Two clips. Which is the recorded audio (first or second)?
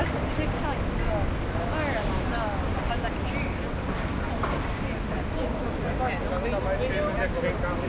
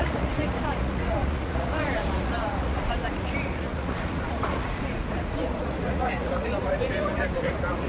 first